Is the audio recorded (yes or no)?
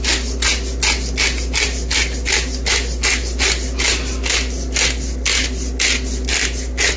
yes